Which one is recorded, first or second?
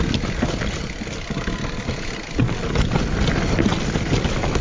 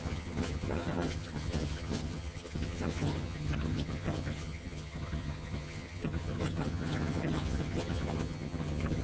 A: first